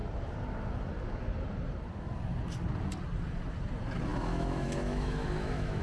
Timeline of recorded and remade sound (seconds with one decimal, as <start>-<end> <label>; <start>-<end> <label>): 0.0-4.1 recorded; 4.1-5.8 remade